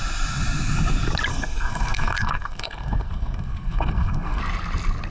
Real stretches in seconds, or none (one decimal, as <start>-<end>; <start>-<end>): 0.0-1.3; 4.4-5.1